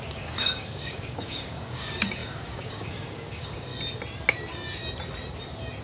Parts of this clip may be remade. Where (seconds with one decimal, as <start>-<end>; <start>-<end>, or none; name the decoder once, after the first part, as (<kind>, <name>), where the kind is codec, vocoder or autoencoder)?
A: 0.0-3.7 (codec, DAC)